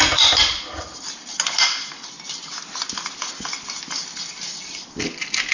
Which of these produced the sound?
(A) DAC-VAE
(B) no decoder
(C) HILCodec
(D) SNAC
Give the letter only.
B